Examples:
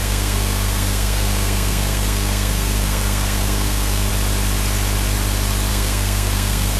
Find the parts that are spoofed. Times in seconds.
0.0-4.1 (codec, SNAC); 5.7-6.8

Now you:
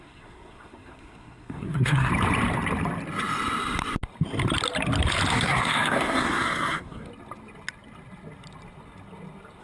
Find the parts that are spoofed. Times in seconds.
0.0-2.1 (codec, SNAC); 5.3-7.1

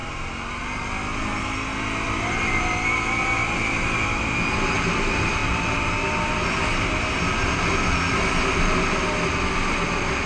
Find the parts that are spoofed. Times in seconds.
none